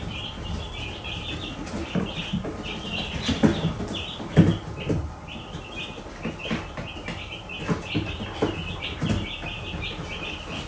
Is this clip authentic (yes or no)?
yes